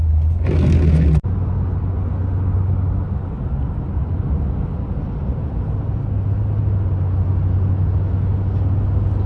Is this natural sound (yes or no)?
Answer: yes